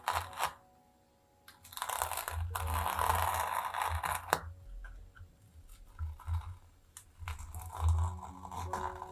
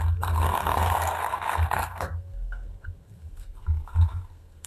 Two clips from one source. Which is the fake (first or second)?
second